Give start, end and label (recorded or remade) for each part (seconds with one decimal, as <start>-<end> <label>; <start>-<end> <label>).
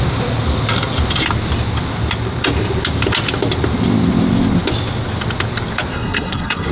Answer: 0.0-5.9 recorded; 5.9-6.7 remade